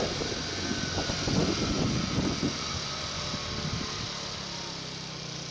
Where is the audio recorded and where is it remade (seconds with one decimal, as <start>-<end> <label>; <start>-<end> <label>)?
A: 0.0-0.4 recorded; 0.4-3.2 remade; 3.2-5.5 recorded